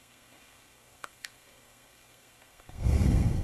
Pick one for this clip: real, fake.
fake